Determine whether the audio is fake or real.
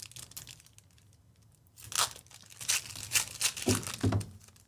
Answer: real